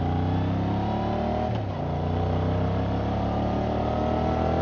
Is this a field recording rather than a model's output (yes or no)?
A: yes